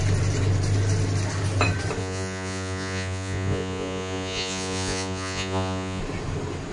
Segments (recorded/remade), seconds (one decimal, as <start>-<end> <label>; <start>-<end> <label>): 0.0-2.0 recorded; 2.0-6.0 remade; 6.0-6.7 recorded